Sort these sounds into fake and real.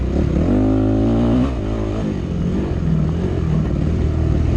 real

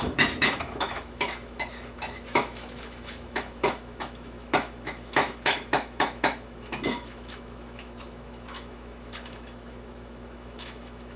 fake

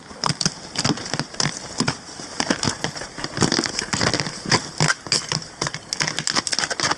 real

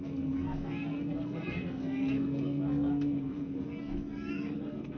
fake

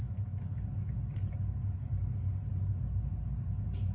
real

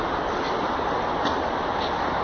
real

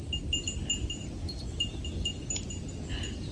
real